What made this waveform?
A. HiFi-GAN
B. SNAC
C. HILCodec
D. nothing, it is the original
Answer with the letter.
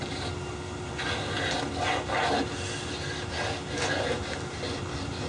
D